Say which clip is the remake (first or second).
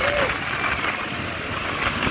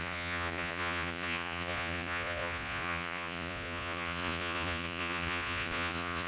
second